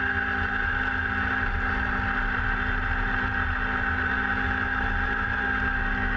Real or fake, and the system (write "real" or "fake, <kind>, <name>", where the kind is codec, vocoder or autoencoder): real